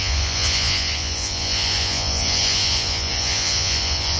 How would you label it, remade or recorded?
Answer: remade